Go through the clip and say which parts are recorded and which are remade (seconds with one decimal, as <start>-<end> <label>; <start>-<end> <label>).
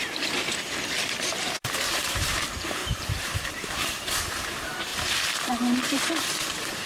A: 0.0-6.9 remade